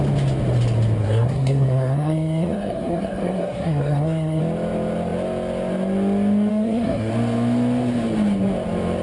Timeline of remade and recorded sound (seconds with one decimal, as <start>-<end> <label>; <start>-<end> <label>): 0.0-1.0 recorded; 1.0-4.4 remade; 4.4-6.5 recorded; 6.5-7.1 remade; 7.1-9.0 recorded